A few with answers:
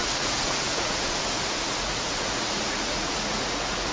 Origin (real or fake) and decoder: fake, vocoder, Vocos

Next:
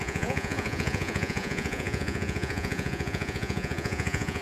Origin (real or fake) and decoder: fake, vocoder, Vocos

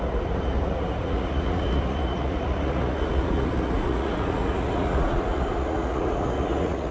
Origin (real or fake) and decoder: fake, vocoder, Vocos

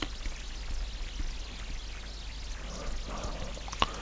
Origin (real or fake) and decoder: real